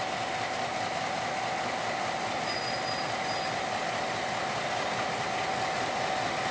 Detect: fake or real real